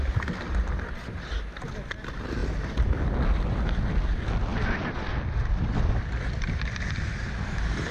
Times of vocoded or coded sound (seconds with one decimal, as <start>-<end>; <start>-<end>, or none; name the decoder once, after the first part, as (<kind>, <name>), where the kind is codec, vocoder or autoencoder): 4.5-5.0 (vocoder, BigVGAN v2)